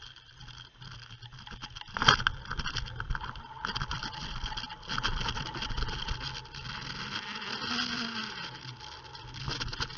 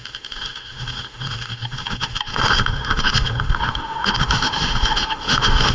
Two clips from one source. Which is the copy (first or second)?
second